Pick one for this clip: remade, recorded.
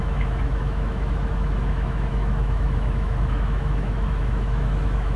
remade